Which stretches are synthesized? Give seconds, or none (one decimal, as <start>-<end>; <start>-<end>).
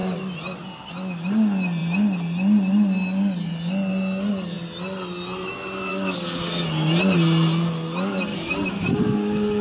5.9-6.6; 8.3-9.6